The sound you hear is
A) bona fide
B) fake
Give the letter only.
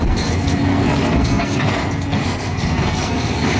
B